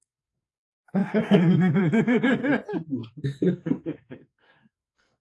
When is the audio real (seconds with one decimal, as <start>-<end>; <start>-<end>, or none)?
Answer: 2.4-3.1